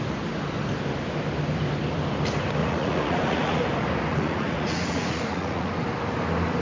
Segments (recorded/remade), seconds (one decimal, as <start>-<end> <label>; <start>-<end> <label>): 0.0-2.6 recorded; 2.6-3.6 remade; 3.6-4.1 recorded; 4.1-5.7 remade; 5.7-6.6 recorded